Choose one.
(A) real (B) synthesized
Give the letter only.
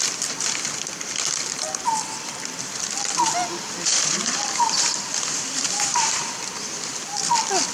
B